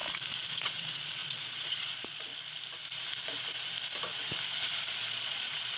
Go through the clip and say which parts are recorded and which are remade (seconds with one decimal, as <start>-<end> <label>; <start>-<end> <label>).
0.0-0.5 recorded; 0.5-2.3 remade; 2.3-4.7 recorded; 4.7-5.8 remade